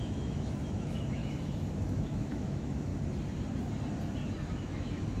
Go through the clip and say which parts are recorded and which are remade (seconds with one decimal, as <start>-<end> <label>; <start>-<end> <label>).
0.0-2.9 remade; 2.9-4.5 recorded; 4.5-5.2 remade